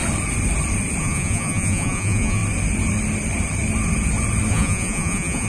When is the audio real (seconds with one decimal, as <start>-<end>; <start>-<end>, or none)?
0.0-1.0; 2.4-4.5